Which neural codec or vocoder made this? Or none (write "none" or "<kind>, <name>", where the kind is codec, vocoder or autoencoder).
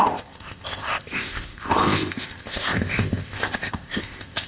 codec, ZipCodec